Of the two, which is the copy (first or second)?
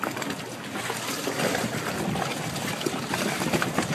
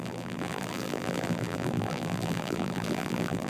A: second